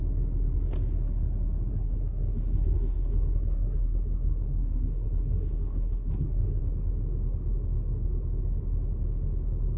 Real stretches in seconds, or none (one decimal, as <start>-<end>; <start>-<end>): 0.0-1.7; 6.6-9.8